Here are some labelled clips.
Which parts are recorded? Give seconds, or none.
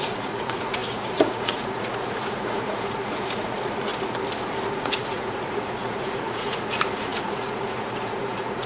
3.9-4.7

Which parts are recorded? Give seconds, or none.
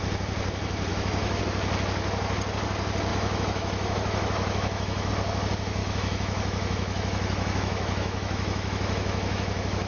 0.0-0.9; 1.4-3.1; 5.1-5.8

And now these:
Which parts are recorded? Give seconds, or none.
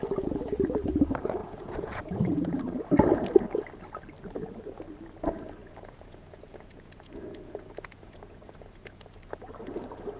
0.0-1.4; 2.6-5.6; 9.2-10.2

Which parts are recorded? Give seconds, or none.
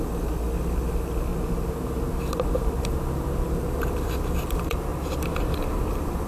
1.3-3.5; 4.9-5.6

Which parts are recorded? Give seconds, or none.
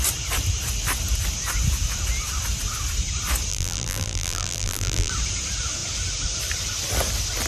0.0-3.5; 5.1-7.5